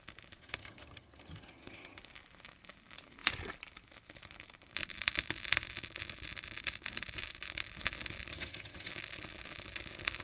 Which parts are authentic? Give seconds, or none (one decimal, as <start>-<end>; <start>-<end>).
0.0-0.4; 2.0-8.3; 8.9-10.2